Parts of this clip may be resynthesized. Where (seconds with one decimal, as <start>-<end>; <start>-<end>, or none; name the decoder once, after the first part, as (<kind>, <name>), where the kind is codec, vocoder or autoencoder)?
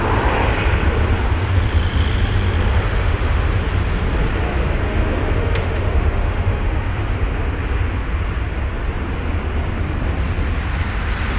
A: 3.0-3.7 (autoencoder, DAC-VAE); 4.8-7.0